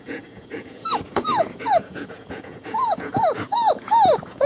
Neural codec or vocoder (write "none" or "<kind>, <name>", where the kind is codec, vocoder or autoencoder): vocoder, Vocos